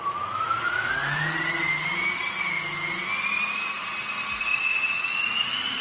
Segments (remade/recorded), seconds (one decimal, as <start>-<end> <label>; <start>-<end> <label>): 0.0-0.9 remade; 0.9-4.4 recorded; 4.4-5.8 remade